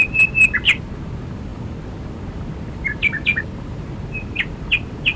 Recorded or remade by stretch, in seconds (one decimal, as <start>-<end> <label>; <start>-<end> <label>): 0.0-5.2 recorded